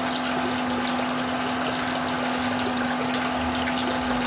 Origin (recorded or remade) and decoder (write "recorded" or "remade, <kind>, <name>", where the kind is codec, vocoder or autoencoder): recorded